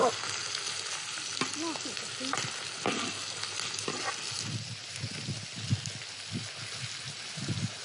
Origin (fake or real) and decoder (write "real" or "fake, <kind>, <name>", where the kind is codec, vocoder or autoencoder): real